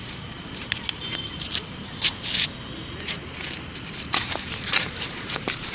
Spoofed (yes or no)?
yes